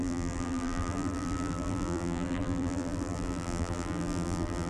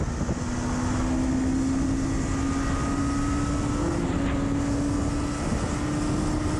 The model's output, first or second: first